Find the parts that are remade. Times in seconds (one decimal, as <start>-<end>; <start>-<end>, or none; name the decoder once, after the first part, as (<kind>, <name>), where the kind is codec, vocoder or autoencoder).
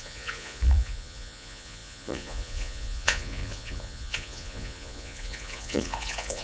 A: 0.0-6.4 (vocoder, Vocos)